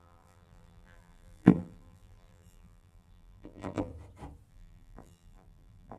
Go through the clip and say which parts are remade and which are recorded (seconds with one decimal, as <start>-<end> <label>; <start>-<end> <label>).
0.0-3.9 remade; 3.9-4.5 recorded; 4.5-6.0 remade